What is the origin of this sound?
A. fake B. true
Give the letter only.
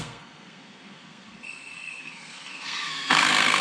A